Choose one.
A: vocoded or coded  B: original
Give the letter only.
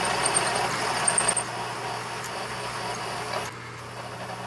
B